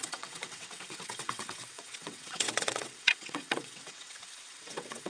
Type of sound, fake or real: fake